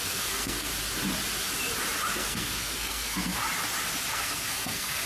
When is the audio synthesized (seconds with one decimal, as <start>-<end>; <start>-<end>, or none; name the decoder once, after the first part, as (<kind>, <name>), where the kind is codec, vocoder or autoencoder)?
0.0-0.7 (codec, SNAC); 2.1-3.4; 4.1-5.1

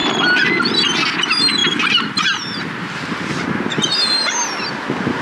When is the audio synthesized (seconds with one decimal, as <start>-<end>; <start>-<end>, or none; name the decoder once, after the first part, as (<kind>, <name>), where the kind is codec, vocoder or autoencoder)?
0.0-1.0 (vocoder, BigVGAN v2); 1.6-3.3

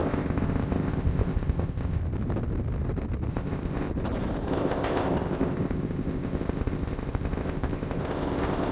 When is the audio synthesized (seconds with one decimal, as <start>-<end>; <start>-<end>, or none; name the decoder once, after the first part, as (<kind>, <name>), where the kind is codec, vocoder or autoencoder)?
0.0-2.0 (codec, ZipCodec); 3.3-3.9; 4.5-8.7